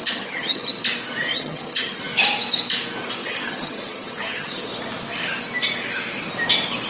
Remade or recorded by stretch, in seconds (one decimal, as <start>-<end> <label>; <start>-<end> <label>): 0.0-0.8 remade; 0.8-1.3 recorded; 1.3-2.0 remade; 2.0-3.2 recorded; 3.2-4.7 remade; 4.7-6.9 recorded